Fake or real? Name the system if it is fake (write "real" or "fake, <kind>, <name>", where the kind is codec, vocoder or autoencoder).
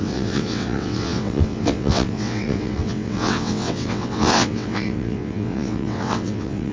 fake, vocoder, WaveNeXt